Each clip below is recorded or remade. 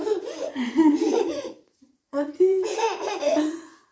remade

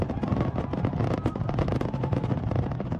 recorded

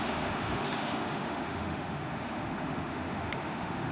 remade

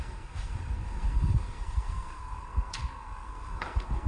remade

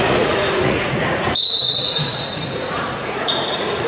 remade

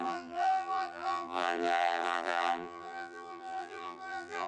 remade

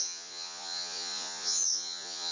remade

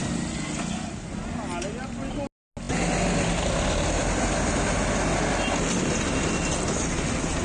recorded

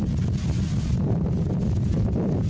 recorded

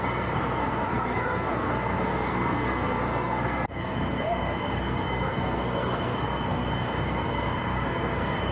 remade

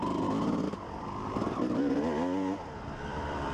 remade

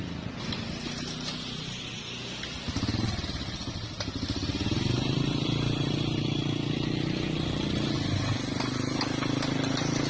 recorded